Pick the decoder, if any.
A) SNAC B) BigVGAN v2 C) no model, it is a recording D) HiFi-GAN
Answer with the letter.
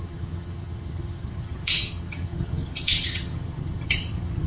D